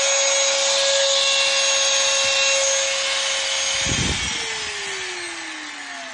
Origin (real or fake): real